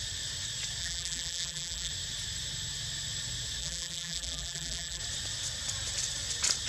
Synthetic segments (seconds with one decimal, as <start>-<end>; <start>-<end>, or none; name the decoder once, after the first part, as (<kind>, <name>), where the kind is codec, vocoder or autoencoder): 0.8-1.9 (vocoder, BigVGAN v2); 3.6-5.0